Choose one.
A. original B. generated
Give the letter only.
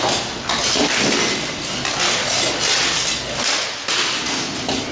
A